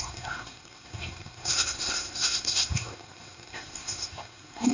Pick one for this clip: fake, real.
fake